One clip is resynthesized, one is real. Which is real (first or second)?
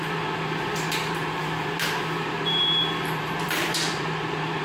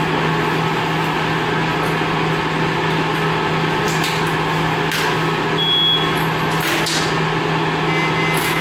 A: second